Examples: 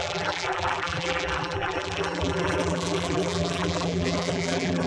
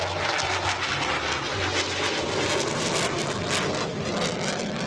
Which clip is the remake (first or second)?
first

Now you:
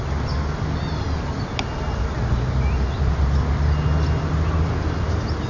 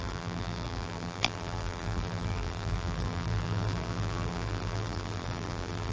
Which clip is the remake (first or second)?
second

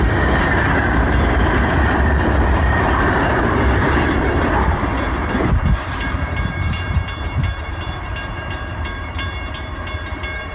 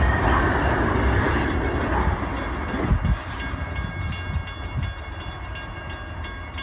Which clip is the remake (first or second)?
first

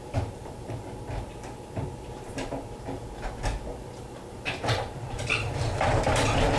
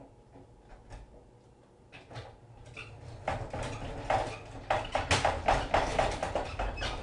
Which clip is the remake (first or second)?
first